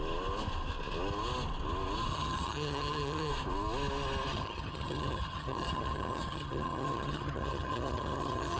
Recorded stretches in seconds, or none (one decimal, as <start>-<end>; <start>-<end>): 0.0-2.1; 3.3-4.3